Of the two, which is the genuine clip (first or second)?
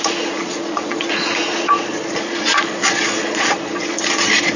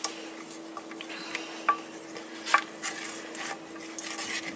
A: second